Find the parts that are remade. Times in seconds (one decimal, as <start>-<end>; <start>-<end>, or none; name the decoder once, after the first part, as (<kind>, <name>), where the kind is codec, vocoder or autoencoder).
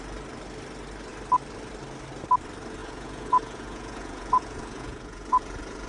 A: 2.8-5.9 (vocoder, Vocos)